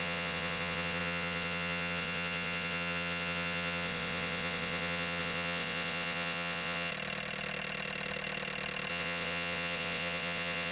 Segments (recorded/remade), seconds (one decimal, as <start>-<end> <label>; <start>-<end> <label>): 0.0-6.9 remade; 6.9-8.9 recorded; 8.9-10.7 remade